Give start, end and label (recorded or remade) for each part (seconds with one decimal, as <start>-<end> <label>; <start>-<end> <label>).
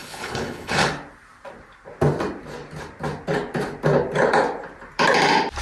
0.0-0.9 remade; 0.9-5.6 recorded